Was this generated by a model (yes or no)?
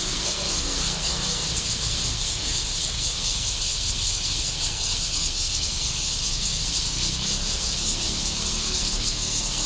yes